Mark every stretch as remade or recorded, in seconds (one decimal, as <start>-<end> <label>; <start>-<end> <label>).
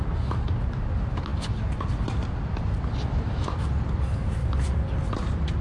0.0-5.6 recorded